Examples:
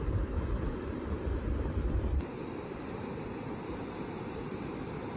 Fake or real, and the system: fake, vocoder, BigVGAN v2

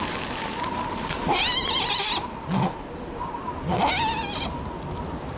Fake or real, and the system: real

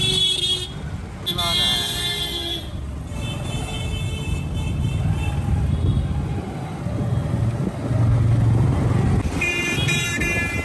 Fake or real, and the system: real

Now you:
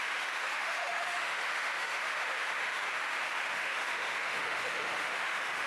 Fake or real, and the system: fake, autoencoder, DAC-VAE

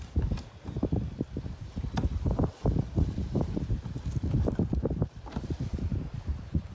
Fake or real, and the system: fake, vocoder, BigVGAN v2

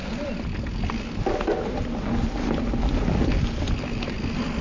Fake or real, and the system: real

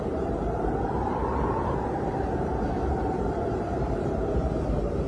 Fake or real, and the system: fake, vocoder, BigVGAN v2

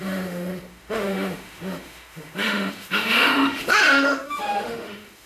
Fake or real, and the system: fake, autoencoder, DAC-VAE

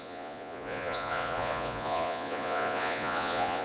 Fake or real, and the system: fake, vocoder, Vocos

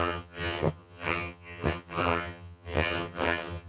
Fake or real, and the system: fake, vocoder, HiFi-GAN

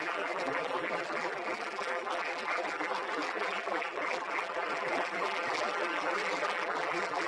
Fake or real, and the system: fake, vocoder, BigVGAN v2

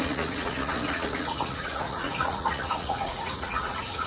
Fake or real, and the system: fake, vocoder, Vocos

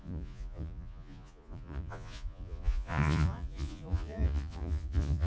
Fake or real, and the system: fake, vocoder, Vocos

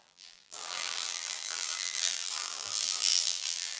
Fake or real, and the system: fake, vocoder, BigVGAN v2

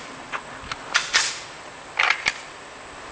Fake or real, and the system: real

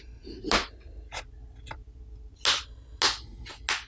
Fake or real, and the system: real